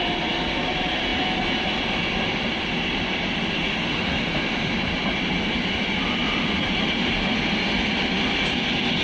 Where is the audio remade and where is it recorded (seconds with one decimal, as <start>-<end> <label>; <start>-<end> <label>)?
0.0-9.0 recorded